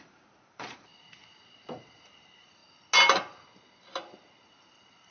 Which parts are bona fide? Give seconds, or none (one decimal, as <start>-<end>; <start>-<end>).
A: 0.9-1.8; 2.6-4.6